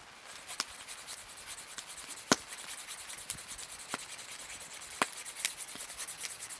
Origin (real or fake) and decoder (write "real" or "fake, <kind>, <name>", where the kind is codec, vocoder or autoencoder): real